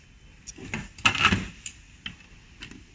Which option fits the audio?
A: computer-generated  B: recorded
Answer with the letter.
B